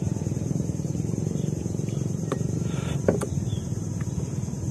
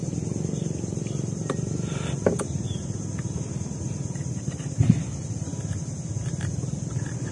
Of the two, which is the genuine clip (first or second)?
second